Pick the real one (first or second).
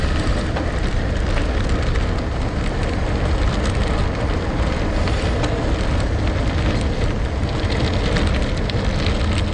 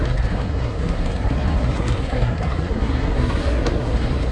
first